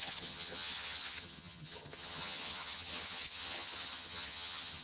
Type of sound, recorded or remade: remade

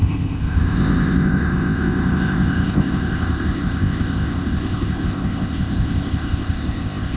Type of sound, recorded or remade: remade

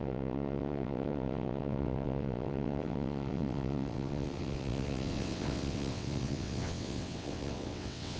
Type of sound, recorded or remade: remade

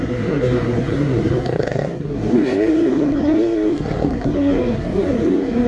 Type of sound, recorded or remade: remade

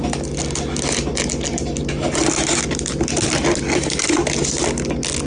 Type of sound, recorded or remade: recorded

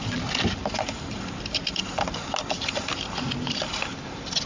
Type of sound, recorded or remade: recorded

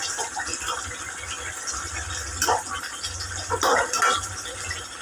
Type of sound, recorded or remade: recorded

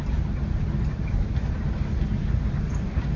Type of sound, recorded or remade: recorded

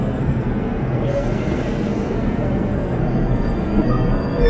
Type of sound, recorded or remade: remade